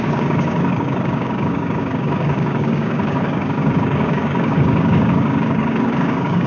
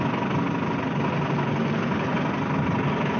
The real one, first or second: second